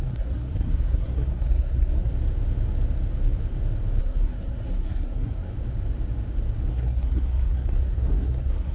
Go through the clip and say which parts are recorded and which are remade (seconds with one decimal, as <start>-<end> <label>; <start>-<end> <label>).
0.0-2.1 remade; 2.1-4.0 recorded; 4.0-5.5 remade; 5.5-6.7 recorded; 6.7-8.7 remade